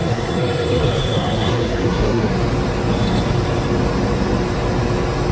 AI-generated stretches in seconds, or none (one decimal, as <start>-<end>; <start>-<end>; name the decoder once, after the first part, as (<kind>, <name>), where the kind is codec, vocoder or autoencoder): 0.0-2.3 (codec, SNAC)